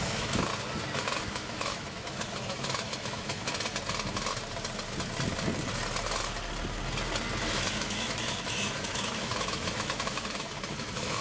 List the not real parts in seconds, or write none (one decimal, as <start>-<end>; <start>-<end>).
0.0-0.5; 1.2-3.5; 7.4-11.2

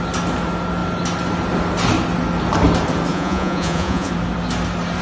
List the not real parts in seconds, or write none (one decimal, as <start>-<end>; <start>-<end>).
3.1-4.1

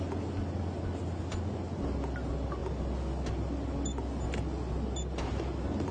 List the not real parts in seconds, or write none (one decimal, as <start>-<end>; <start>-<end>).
none

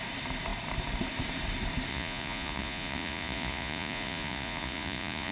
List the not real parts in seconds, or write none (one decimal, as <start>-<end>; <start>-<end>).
1.9-5.3

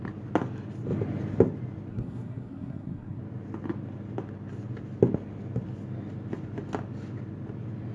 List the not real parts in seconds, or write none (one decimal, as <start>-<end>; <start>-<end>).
1.9-3.2

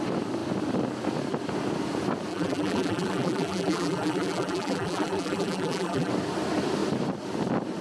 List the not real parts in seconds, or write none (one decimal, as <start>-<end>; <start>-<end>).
2.3-6.1

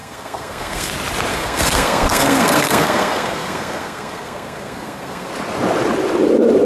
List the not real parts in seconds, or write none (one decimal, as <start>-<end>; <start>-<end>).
0.0-0.9; 1.3-5.3

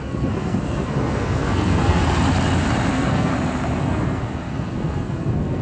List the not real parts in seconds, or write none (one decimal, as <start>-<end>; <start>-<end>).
0.0-2.0; 2.9-3.3; 3.8-5.6